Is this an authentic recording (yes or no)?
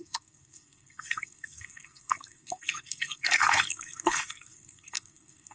no